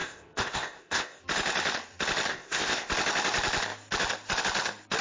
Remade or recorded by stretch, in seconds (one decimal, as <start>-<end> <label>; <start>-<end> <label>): 0.0-1.2 remade; 1.2-2.3 recorded; 2.3-2.9 remade; 2.9-5.0 recorded